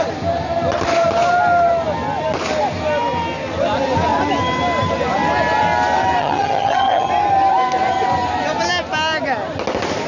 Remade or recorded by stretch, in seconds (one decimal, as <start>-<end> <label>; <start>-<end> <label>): 0.0-6.2 recorded; 6.2-7.1 remade; 7.1-10.1 recorded